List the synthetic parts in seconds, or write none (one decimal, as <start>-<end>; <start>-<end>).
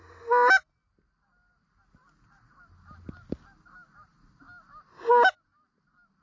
none